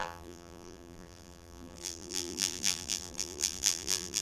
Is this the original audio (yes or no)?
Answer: no